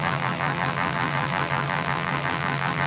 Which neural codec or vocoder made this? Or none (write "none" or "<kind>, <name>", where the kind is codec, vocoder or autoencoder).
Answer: vocoder, BigVGAN v2